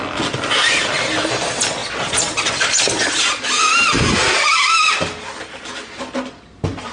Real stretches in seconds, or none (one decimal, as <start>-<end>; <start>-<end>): 0.0-6.9